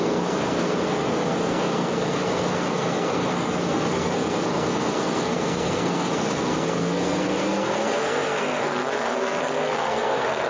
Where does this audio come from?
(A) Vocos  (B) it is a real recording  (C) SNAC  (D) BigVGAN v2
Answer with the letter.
C